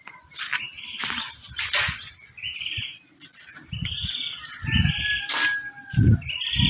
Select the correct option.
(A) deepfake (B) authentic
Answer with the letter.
B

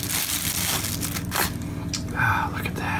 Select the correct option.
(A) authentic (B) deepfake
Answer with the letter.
A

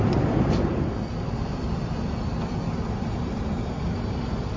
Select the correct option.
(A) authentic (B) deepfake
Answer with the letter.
A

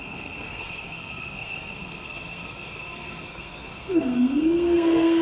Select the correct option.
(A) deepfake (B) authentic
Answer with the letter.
A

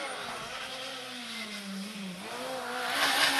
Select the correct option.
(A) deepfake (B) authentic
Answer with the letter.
B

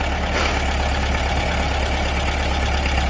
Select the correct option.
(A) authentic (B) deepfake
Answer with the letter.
A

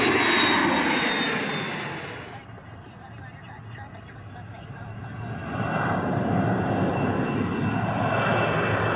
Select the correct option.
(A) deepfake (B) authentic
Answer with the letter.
B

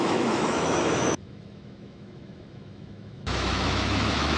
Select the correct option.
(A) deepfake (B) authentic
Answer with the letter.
A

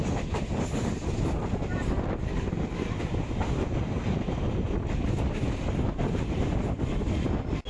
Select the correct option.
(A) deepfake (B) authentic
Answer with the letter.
B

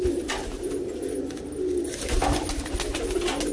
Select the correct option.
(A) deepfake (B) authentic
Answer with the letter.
B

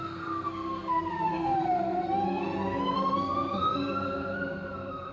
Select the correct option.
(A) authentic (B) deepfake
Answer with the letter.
B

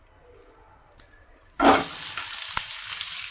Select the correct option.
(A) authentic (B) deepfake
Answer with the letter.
A